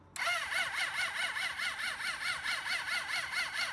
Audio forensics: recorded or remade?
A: recorded